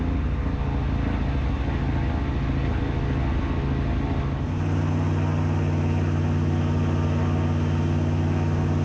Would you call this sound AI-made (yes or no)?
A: no